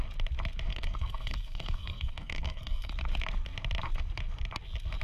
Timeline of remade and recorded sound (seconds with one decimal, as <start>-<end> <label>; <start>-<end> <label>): 0.0-0.7 recorded; 0.7-2.9 remade; 2.9-5.0 recorded

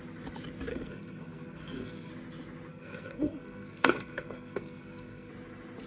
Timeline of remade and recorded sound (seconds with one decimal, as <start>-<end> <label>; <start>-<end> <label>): 0.0-0.7 recorded; 0.7-2.1 remade; 2.1-2.7 recorded; 2.7-5.3 remade; 5.3-5.9 recorded

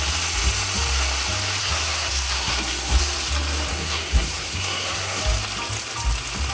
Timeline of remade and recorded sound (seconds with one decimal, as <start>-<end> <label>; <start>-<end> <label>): 0.0-1.6 recorded; 1.6-3.0 remade; 3.0-3.7 recorded; 3.7-5.2 remade; 5.2-6.5 recorded